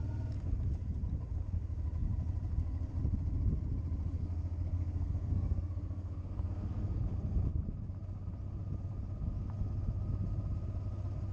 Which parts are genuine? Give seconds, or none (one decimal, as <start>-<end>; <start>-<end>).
0.0-4.2; 7.0-11.3